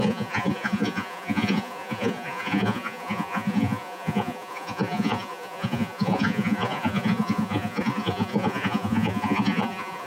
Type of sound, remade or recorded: remade